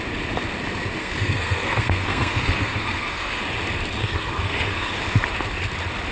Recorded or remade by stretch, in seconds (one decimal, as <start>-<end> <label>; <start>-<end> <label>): 0.0-1.0 recorded; 1.0-3.4 remade; 3.4-4.0 recorded; 4.0-4.9 remade; 4.9-6.1 recorded